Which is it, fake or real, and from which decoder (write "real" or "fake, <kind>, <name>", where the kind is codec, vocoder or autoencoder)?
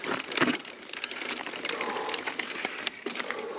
fake, vocoder, BigVGAN v2